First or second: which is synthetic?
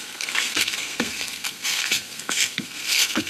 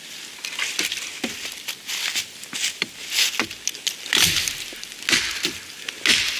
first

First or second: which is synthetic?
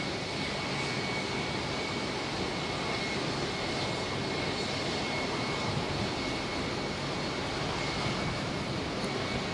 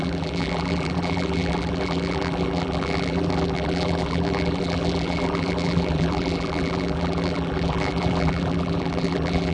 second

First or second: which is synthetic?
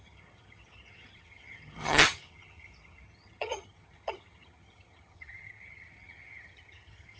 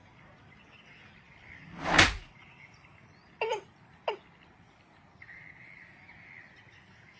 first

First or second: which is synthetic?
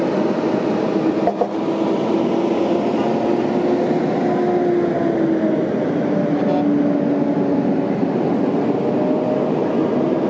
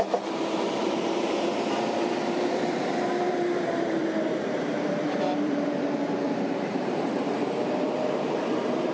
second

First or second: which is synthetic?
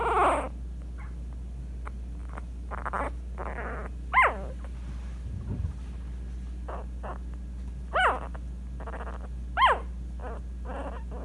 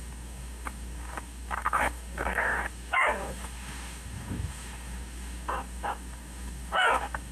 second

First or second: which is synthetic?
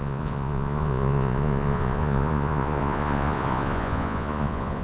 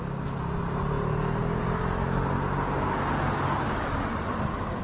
first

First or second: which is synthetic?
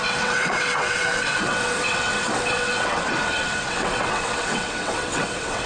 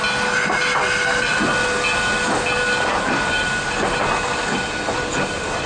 first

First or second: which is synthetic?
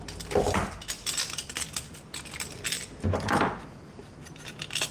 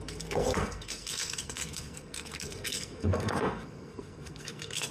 second